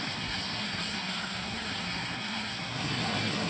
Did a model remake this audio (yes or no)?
yes